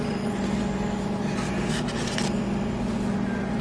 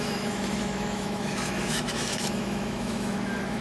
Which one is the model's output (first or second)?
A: second